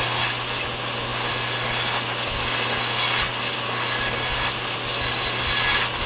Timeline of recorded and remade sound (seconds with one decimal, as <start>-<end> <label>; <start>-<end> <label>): 0.0-6.1 recorded